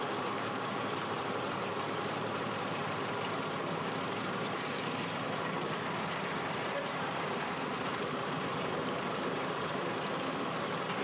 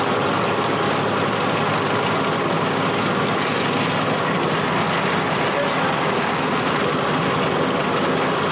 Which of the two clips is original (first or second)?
second